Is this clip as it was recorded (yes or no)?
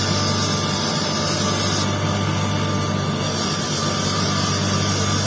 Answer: yes